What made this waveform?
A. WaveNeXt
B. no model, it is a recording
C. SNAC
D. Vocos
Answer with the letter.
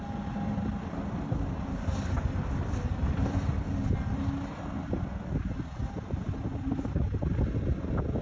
B